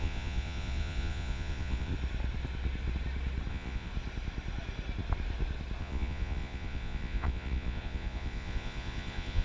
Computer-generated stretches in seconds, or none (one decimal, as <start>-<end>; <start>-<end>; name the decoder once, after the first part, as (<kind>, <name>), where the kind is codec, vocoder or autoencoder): 0.0-1.9 (vocoder, Vocos); 3.5-3.9; 5.8-9.4